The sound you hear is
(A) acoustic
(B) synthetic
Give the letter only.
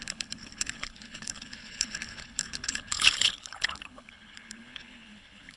B